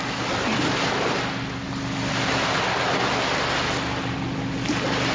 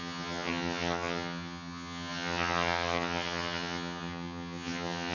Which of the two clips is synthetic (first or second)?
second